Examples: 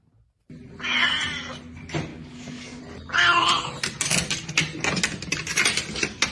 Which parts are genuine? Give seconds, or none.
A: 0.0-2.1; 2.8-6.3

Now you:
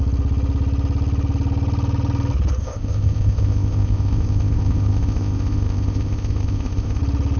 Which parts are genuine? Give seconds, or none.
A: 0.0-2.6; 7.0-7.4

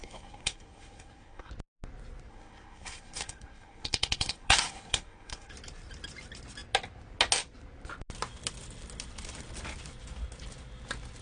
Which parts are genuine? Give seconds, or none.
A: 1.5-2.3; 5.5-11.2

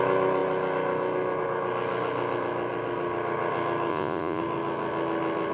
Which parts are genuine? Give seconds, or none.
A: 0.0-3.9; 4.4-5.5